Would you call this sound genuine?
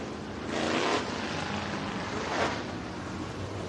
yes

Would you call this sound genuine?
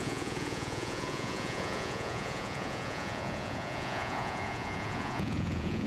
no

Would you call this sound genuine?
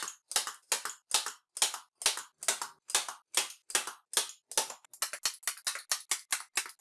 yes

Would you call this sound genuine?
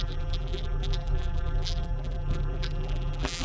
no